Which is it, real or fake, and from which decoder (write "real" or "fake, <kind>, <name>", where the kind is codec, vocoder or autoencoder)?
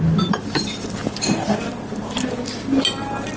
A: real